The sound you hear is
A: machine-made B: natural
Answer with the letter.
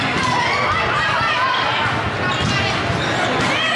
B